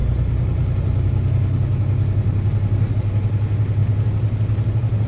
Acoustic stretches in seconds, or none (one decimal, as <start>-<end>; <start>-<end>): 0.0-5.1